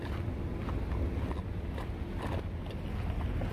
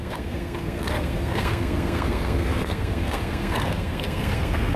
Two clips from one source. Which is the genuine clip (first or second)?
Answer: first